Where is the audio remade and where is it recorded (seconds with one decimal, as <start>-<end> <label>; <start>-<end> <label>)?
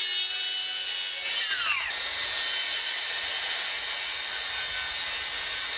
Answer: 0.0-5.8 recorded